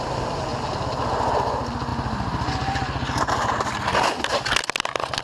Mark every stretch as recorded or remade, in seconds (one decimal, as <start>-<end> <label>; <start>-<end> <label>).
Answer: 0.0-5.2 recorded